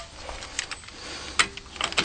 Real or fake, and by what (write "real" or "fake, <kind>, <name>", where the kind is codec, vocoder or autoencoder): real